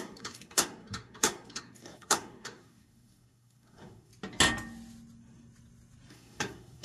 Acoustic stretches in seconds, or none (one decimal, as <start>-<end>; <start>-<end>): 4.1-6.1